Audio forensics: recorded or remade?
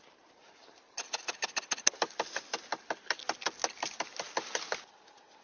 recorded